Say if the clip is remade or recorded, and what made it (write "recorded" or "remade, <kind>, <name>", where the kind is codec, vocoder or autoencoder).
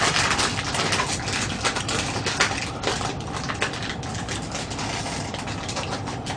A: recorded